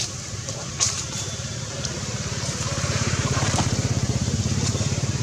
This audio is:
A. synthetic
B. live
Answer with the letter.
A